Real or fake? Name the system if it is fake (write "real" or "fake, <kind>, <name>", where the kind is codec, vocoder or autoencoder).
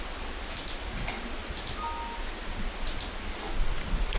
real